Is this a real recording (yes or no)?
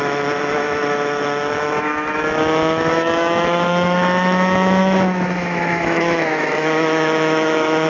no